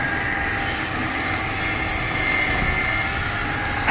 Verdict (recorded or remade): recorded